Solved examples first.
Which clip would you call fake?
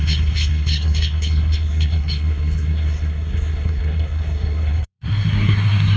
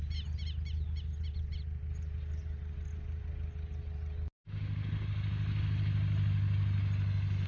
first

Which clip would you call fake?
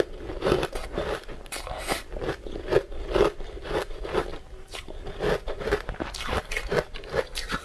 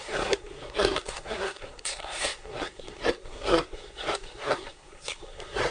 second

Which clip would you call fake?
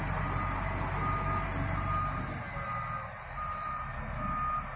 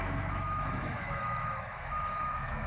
second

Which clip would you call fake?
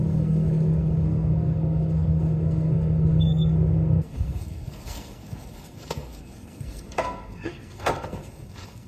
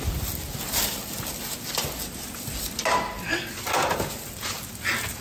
first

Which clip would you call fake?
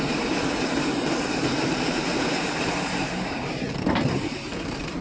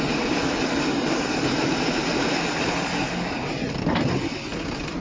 first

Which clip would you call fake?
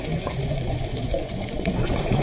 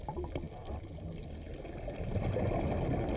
first